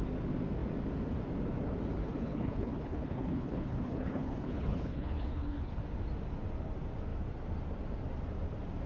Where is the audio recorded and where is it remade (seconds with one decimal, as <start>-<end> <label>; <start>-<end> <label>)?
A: 0.0-2.0 recorded; 2.0-5.8 remade; 5.8-8.9 recorded